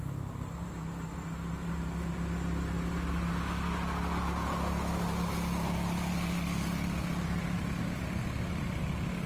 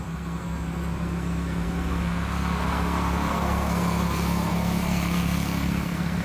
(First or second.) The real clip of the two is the first